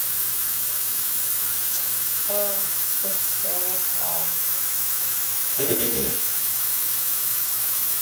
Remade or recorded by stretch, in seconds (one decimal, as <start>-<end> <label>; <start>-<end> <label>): 0.0-3.4 remade; 3.4-4.0 recorded; 4.0-8.0 remade